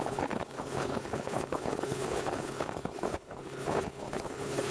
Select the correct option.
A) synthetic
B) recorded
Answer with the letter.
A